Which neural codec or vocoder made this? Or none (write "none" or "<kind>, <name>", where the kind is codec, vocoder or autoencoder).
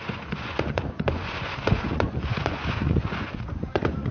vocoder, Vocos